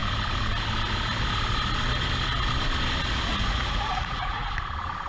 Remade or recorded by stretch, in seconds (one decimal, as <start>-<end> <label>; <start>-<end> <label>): 0.0-3.3 recorded; 3.3-4.5 remade; 4.5-5.1 recorded

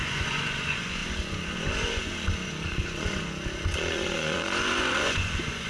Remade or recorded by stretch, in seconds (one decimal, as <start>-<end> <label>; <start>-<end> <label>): 0.0-5.7 remade